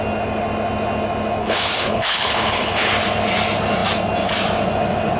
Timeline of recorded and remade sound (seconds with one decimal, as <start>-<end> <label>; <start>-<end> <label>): 0.0-1.4 recorded; 1.4-2.9 remade; 2.9-5.2 recorded